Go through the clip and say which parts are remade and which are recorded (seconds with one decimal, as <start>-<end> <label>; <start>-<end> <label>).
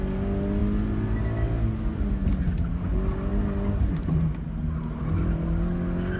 0.0-6.2 recorded